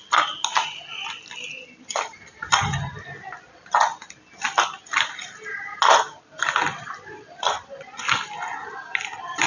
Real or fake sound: real